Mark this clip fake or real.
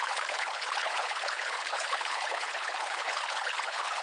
fake